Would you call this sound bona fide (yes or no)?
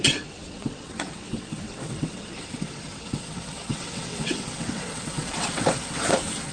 no